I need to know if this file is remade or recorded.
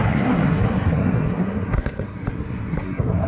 remade